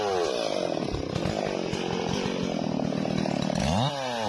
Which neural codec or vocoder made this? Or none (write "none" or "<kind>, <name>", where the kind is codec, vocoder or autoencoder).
none